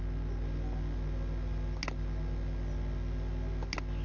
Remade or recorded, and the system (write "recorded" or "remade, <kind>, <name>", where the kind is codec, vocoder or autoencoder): recorded